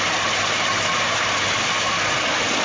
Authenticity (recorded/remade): recorded